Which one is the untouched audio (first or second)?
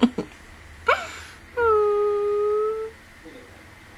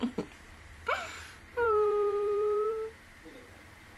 first